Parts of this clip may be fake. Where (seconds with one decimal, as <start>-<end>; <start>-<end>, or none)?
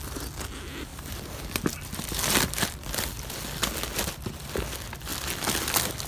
none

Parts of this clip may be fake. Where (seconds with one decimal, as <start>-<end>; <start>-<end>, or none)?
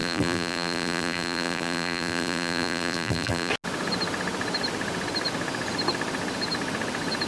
0.0-3.5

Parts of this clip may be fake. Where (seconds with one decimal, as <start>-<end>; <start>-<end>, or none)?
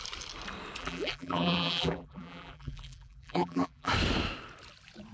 0.8-3.9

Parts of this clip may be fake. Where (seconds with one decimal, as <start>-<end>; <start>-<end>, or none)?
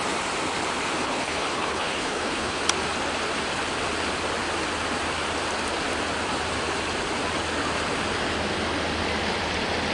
1.0-2.6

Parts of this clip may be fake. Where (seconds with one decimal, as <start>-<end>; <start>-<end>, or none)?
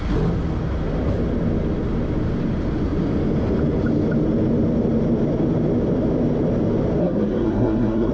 7.0-8.1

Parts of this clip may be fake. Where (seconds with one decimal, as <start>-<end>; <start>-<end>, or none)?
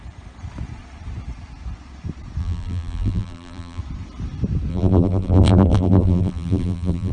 2.4-3.8; 4.7-7.1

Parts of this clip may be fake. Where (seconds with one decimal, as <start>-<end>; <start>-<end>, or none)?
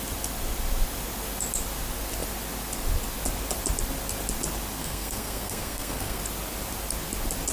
4.8-6.2